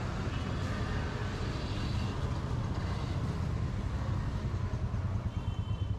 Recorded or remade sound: recorded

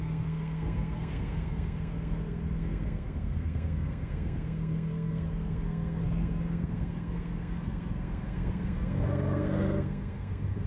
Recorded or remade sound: remade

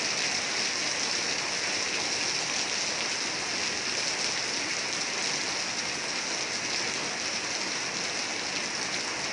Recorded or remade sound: recorded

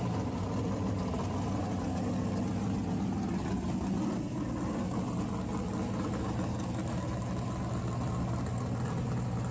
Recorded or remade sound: recorded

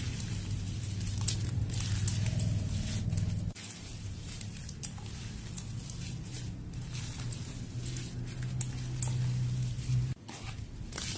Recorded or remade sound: recorded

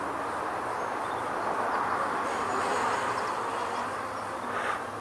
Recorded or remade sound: recorded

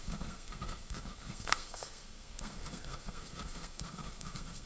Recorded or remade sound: remade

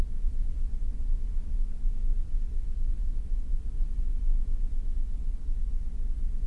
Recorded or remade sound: recorded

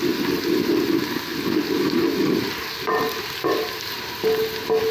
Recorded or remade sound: recorded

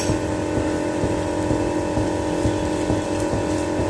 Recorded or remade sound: recorded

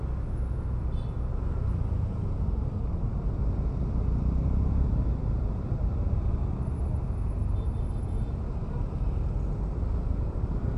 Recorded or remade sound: recorded